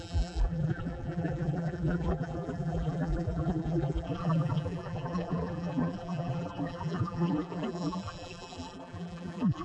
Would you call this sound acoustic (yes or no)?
no